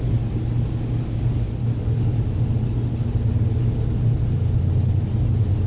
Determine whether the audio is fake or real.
real